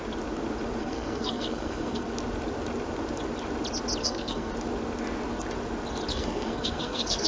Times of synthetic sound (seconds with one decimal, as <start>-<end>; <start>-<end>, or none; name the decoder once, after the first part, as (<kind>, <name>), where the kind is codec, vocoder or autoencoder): 0.8-2.1 (codec, SNAC); 4.0-4.5; 6.1-7.3